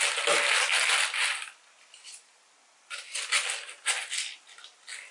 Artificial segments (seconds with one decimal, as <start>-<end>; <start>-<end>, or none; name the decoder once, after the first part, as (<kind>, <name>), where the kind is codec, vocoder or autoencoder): none